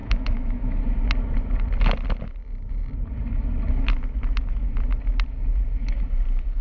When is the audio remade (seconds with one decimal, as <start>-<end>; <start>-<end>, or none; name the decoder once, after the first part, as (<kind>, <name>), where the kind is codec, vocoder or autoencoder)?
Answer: 0.0-0.8 (autoencoder, DAC-VAE)